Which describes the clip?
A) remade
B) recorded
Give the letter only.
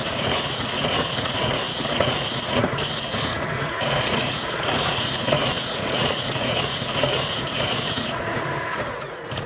A